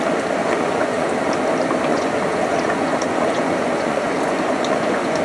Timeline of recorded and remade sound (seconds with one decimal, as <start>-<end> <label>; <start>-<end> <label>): 0.0-0.4 recorded; 0.4-1.1 remade; 1.1-1.9 recorded; 1.9-5.2 remade

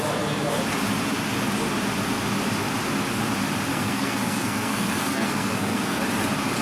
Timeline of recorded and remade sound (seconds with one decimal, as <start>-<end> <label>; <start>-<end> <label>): 0.0-3.7 recorded; 3.7-6.0 remade; 6.0-6.6 recorded

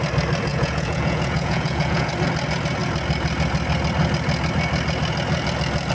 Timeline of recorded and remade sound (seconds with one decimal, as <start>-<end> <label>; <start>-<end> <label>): 0.0-0.5 recorded; 0.5-2.1 remade; 2.1-5.9 recorded